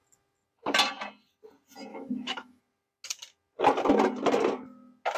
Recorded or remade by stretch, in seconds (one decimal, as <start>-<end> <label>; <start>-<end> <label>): 0.0-1.9 recorded; 1.9-2.6 remade; 2.6-5.2 recorded

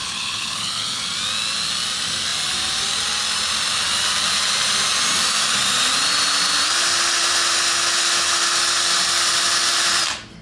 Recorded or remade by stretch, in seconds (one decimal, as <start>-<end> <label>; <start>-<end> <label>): 0.0-1.0 remade; 1.0-10.4 recorded

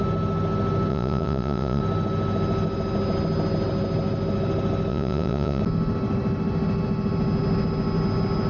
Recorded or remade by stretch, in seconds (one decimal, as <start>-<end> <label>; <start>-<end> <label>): 0.0-0.9 recorded; 0.9-1.8 remade; 1.8-4.9 recorded; 4.9-5.6 remade; 5.6-8.5 recorded